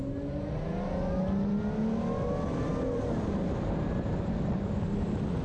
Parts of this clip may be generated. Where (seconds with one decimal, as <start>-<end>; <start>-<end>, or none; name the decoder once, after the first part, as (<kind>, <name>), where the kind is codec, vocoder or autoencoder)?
none